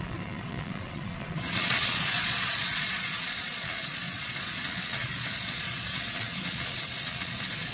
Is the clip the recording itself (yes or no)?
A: no